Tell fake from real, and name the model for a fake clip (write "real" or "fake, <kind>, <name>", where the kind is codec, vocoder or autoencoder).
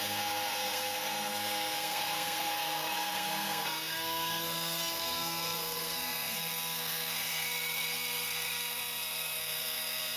fake, codec, SNAC